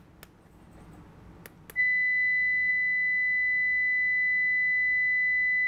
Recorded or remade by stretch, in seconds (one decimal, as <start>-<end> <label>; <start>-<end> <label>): 0.0-1.8 recorded; 1.8-2.7 remade; 2.7-5.7 recorded